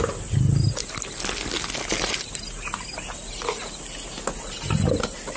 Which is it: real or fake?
real